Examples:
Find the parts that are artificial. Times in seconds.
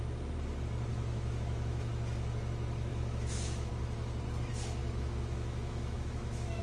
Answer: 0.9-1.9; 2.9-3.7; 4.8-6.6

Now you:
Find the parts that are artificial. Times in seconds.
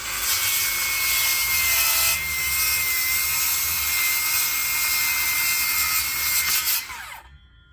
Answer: none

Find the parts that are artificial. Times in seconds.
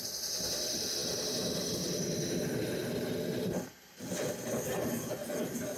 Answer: none